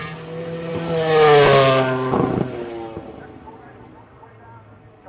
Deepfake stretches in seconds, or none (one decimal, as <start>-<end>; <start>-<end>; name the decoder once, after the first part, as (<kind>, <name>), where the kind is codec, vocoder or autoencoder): none